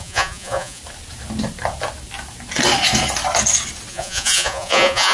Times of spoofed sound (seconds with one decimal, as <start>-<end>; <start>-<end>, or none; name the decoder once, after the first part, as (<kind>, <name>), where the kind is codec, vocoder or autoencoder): 0.0-0.8 (vocoder, Vocos); 3.9-5.1